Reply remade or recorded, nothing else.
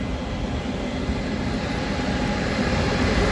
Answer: remade